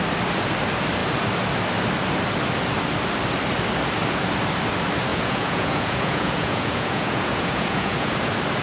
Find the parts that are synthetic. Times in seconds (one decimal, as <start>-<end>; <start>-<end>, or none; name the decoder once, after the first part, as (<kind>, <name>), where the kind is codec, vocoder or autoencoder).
5.1-8.1 (vocoder, Vocos)